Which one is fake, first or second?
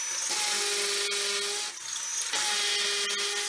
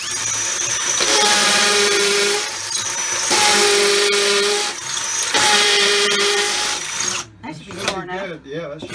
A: second